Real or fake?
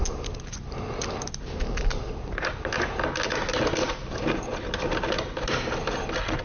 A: real